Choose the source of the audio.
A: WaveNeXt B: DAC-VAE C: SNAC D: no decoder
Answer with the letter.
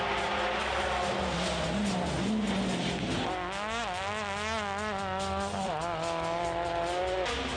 D